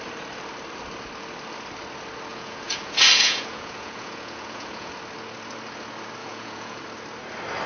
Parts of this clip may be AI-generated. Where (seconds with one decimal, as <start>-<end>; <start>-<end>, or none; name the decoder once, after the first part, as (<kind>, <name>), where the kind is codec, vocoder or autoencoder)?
2.3-4.9 (vocoder, Vocos); 6.2-6.8